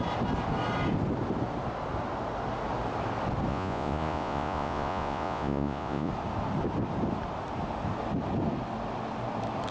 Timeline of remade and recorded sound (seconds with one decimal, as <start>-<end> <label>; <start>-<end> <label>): 0.0-3.5 recorded; 3.5-6.1 remade; 6.1-9.7 recorded